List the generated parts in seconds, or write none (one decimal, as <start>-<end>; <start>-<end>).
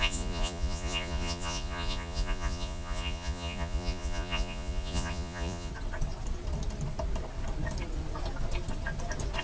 0.0-5.7